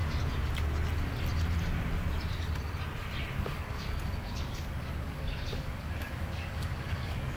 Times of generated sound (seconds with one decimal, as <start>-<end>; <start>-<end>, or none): 3.4-7.4